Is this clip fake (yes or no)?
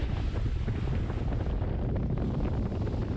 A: no